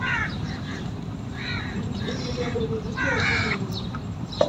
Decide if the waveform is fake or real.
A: fake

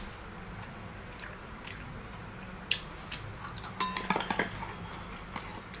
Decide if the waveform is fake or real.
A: real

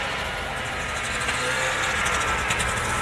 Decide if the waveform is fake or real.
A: real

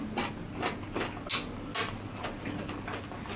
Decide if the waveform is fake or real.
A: real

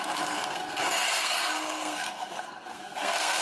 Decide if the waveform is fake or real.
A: fake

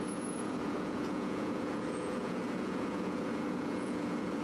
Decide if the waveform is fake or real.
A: fake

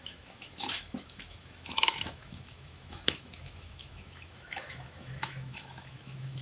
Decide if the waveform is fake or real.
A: fake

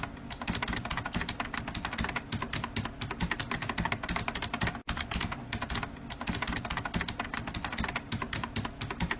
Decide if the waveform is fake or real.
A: real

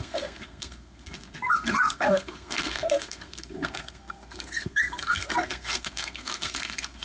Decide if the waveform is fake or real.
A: fake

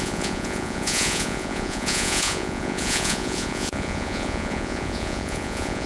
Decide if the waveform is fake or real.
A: fake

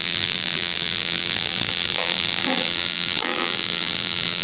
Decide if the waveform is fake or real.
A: fake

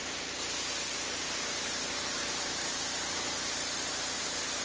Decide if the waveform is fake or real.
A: real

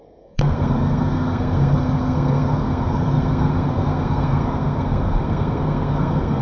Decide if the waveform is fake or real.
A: fake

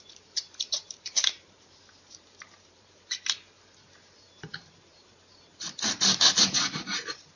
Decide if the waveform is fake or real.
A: fake